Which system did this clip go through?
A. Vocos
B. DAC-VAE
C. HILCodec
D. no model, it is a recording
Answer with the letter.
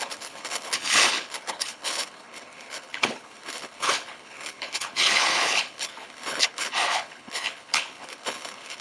C